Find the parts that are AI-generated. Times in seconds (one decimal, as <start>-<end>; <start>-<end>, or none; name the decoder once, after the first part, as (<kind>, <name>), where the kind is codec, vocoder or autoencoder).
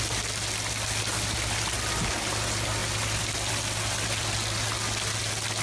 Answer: none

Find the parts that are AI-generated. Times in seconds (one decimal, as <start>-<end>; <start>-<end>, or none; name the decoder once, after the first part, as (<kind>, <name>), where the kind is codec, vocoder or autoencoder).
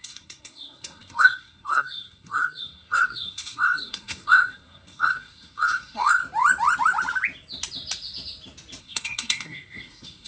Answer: 0.0-6.2 (codec, SNAC); 8.8-10.3